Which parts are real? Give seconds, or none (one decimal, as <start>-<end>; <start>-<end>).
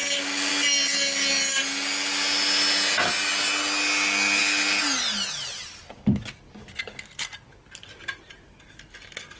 0.0-9.4